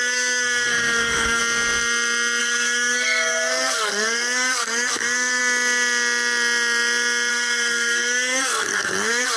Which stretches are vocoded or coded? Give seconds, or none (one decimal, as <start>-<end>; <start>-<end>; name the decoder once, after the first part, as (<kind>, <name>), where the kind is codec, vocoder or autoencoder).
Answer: 0.0-1.4 (codec, SNAC); 2.4-5.4; 7.3-9.4